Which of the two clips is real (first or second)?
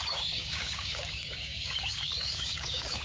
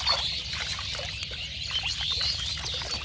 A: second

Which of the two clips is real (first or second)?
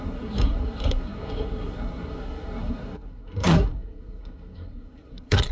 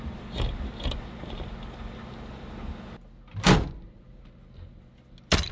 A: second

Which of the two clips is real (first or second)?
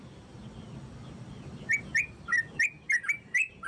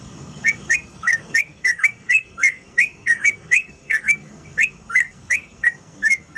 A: first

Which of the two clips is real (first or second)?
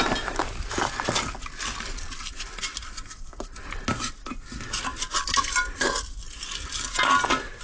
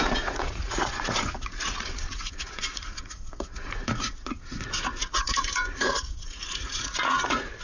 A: first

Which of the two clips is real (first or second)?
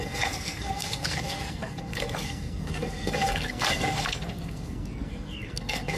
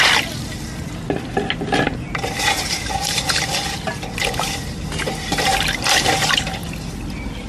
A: second